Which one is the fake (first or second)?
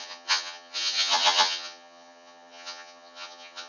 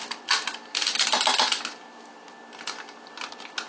first